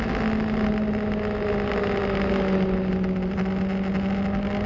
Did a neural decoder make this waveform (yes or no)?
no